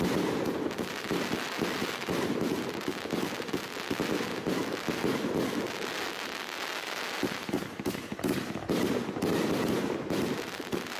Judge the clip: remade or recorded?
recorded